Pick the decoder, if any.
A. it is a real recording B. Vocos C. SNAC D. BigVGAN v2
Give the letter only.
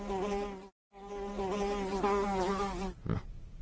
A